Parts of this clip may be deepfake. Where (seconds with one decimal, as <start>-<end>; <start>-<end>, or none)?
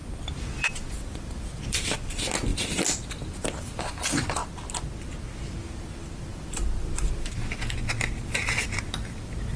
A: 0.0-4.4; 5.6-9.6